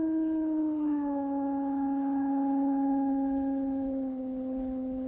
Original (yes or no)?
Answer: no